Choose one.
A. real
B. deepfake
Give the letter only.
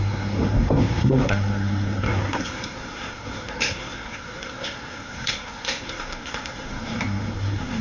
B